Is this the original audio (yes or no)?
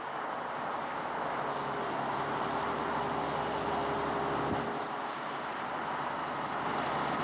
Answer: yes